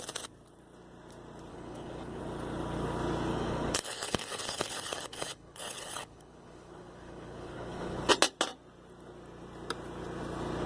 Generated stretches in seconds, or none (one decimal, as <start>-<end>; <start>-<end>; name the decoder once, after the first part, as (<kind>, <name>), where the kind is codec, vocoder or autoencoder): 1.5-2.2 (codec, HILCodec); 3.3-8.0